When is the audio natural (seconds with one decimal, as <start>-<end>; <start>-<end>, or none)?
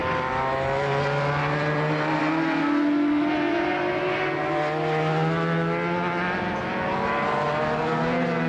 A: 2.2-8.5